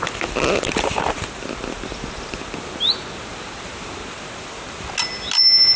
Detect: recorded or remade recorded